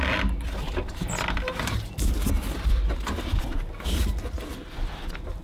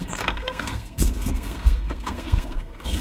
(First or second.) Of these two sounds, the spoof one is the second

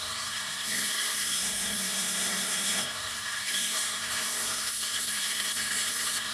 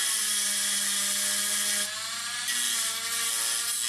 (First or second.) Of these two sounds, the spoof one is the first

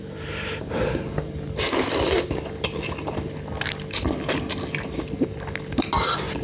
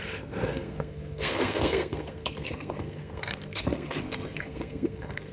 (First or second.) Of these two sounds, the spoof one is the second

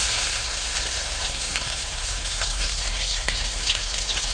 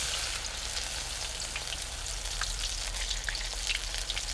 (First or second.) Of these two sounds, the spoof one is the first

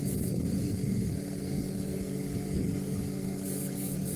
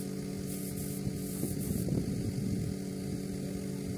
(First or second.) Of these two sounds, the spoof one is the first